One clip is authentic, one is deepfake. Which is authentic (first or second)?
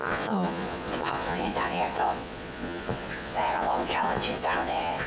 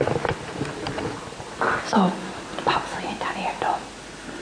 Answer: second